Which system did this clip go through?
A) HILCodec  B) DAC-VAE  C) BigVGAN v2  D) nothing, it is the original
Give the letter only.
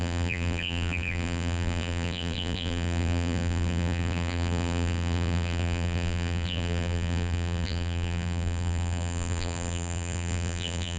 C